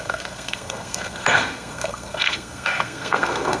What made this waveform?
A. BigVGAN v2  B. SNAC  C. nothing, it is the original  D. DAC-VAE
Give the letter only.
B